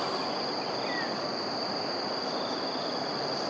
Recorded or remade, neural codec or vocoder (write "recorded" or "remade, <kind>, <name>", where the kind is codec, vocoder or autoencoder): recorded